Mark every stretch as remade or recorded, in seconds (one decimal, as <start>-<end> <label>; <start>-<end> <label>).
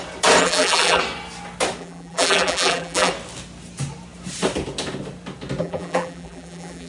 0.0-0.4 recorded; 0.4-1.0 remade; 1.0-1.8 recorded; 1.8-3.1 remade; 3.1-5.6 recorded; 5.6-6.9 remade